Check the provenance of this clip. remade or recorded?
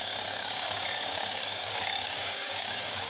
remade